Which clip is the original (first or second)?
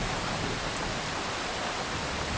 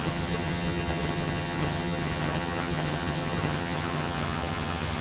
first